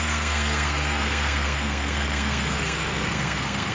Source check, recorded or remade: remade